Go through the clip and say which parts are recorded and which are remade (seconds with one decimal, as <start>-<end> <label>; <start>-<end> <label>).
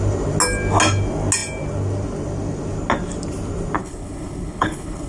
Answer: 0.0-3.8 recorded; 3.8-5.1 remade